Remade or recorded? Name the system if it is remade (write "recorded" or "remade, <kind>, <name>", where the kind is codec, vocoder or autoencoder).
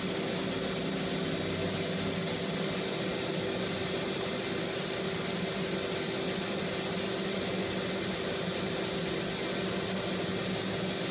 recorded